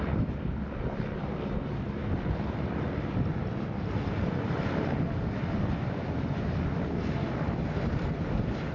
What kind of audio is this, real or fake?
fake